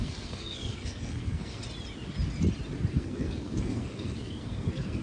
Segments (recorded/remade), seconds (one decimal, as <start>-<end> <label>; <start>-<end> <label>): 0.0-1.6 remade; 1.6-2.9 recorded; 2.9-5.0 remade